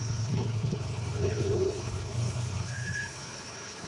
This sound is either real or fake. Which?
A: fake